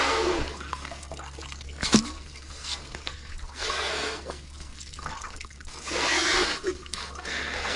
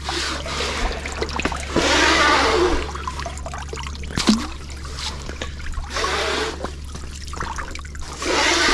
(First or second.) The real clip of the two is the second